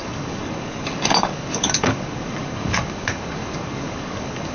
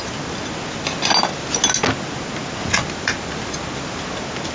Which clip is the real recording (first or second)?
second